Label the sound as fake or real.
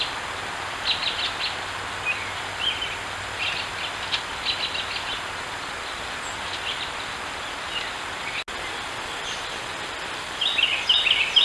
real